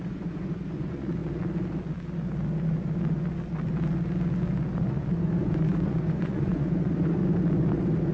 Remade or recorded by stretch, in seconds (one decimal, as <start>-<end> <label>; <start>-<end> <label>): 0.0-1.2 remade; 1.2-4.9 recorded; 4.9-7.2 remade; 7.2-8.1 recorded